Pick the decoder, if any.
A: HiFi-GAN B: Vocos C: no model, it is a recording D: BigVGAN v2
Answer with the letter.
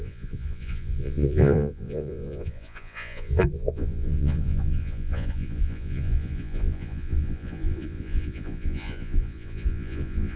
B